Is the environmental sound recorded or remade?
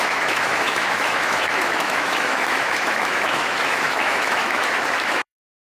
remade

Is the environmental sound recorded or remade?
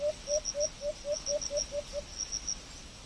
recorded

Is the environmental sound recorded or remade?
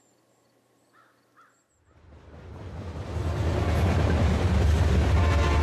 recorded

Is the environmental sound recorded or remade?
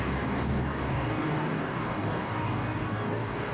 remade